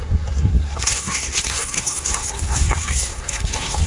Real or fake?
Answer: fake